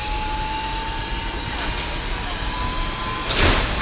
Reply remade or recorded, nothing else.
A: recorded